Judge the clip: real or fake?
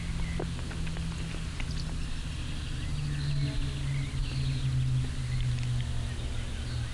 real